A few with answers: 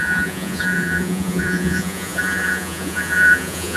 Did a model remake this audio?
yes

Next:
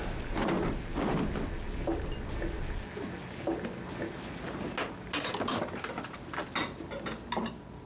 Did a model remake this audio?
no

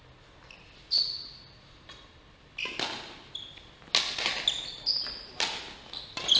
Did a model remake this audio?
no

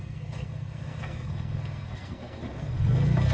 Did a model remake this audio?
yes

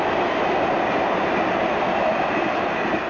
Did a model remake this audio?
no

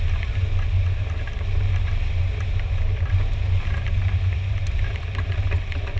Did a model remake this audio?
no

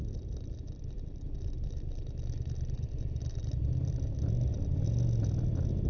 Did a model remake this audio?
no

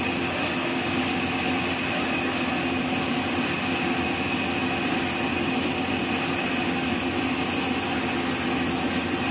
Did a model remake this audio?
no